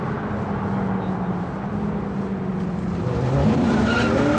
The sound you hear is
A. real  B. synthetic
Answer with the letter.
A